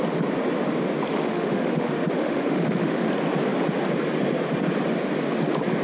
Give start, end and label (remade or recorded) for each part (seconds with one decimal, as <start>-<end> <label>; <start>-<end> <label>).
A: 0.0-1.1 recorded; 1.1-3.1 remade; 3.1-5.8 recorded